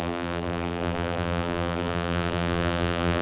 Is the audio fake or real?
fake